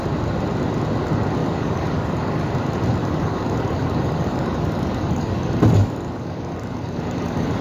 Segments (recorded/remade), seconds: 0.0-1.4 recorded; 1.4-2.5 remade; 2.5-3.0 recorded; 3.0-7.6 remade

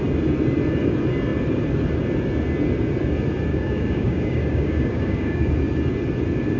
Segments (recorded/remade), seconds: 0.0-3.5 recorded; 3.5-5.5 remade; 5.5-6.6 recorded

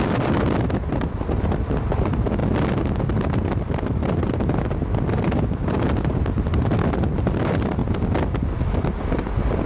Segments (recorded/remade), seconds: 0.0-9.7 recorded

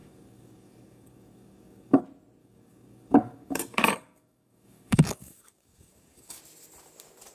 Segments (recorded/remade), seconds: 0.0-2.0 remade; 2.0-2.4 recorded; 2.4-6.4 remade; 6.4-7.3 recorded